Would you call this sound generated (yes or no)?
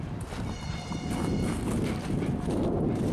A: no